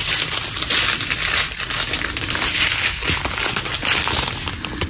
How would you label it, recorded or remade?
recorded